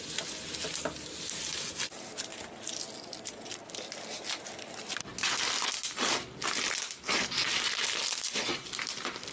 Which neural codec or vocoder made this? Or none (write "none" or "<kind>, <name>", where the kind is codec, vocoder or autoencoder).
none